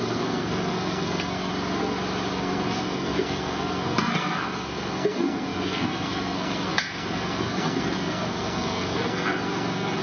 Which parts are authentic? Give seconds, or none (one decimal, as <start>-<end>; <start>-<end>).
1.5-2.3